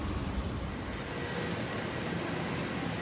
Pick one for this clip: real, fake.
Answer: real